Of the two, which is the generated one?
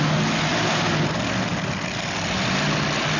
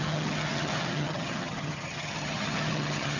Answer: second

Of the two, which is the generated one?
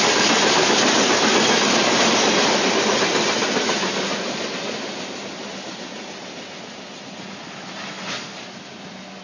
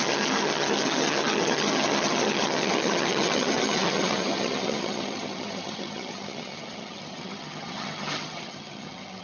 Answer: second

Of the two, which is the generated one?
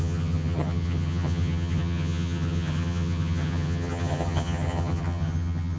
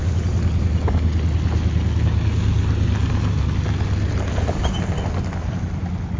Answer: first